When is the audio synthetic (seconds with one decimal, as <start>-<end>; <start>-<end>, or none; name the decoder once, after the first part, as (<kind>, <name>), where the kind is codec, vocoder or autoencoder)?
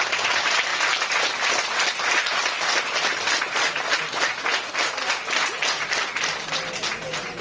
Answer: none